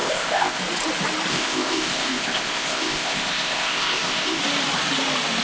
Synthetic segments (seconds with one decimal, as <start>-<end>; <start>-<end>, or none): 0.0-0.6; 1.3-4.4